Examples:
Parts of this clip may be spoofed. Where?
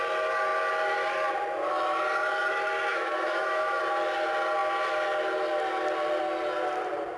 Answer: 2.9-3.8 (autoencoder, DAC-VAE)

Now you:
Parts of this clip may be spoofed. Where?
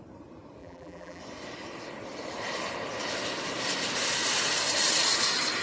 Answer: 0.6-1.2 (vocoder, BigVGAN v2)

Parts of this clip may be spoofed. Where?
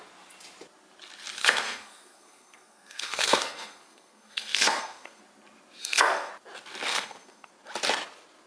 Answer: 1.4-5.2 (codec, SNAC); 5.8-6.3; 6.9-7.5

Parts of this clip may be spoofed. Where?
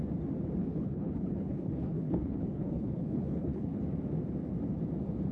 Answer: 0.6-3.8 (codec, HILCodec)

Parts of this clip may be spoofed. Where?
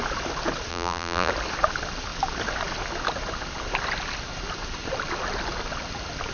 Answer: 0.7-1.3 (vocoder, BigVGAN v2)